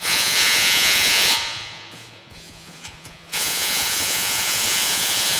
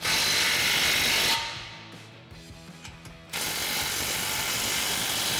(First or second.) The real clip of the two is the second